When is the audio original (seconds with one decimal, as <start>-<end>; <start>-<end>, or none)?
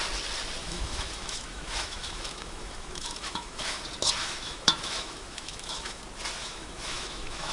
0.0-0.6; 3.8-4.2; 6.0-6.4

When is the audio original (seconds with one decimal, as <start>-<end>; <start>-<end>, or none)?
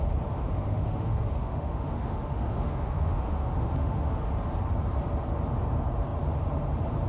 0.0-0.4; 4.2-7.1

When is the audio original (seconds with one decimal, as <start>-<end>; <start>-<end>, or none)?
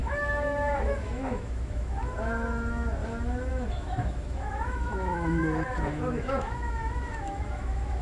3.0-3.5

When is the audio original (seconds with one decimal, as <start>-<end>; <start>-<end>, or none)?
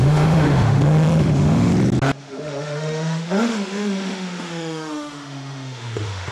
1.7-2.2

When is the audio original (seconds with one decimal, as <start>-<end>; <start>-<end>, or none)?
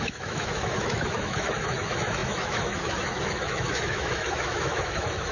none